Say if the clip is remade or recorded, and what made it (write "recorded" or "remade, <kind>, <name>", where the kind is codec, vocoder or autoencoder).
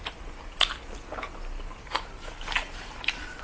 recorded